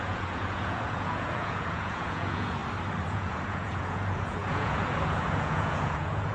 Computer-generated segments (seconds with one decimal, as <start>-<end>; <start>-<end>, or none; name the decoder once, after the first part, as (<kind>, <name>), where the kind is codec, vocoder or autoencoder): 0.0-2.6 (vocoder, Vocos); 3.1-6.3